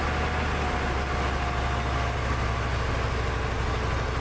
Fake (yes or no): no